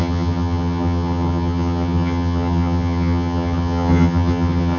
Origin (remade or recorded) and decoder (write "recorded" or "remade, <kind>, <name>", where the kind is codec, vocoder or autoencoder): remade, vocoder, HiFi-GAN